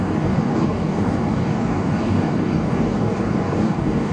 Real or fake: fake